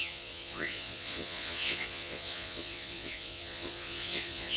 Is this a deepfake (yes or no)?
yes